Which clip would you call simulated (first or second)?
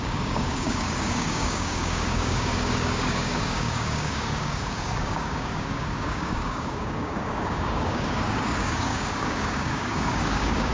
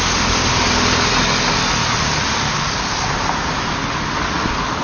first